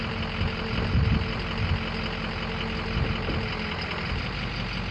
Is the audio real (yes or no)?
yes